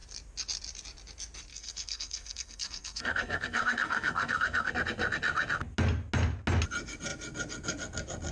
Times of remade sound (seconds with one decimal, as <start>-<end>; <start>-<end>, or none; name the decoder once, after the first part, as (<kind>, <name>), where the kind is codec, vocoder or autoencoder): 1.5-4.7 (codec, SNAC)